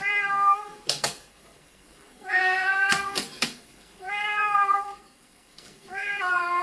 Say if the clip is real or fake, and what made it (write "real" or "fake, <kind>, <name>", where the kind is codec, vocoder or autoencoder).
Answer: fake, codec, SNAC